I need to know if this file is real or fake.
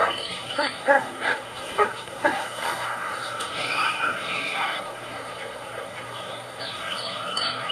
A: fake